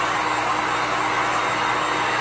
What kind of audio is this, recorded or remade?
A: recorded